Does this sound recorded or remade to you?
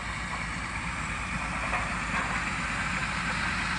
recorded